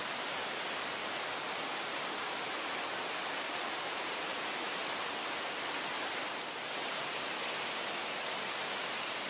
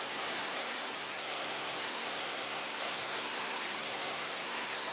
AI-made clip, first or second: second